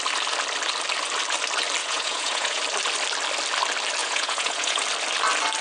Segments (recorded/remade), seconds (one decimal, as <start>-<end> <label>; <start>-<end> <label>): 0.0-1.8 recorded; 1.8-2.6 remade; 2.6-4.0 recorded; 4.0-4.8 remade; 4.8-5.6 recorded